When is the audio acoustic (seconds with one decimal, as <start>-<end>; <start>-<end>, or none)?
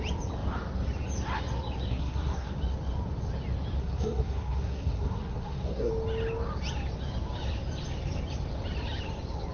0.0-1.9; 2.5-3.8; 5.9-9.5